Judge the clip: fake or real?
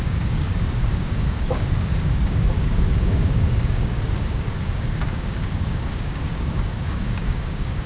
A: fake